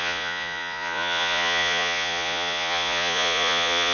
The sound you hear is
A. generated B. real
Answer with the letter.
A